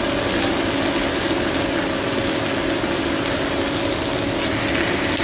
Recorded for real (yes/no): yes